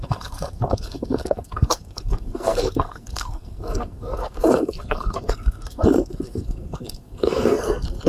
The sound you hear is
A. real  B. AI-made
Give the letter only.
B